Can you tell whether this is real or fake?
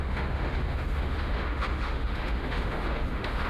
fake